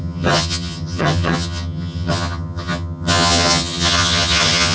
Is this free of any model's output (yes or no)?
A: no